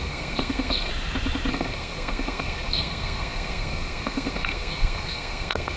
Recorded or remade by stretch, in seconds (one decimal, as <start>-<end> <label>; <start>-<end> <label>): 0.0-0.9 remade; 0.9-1.5 recorded; 1.5-5.8 remade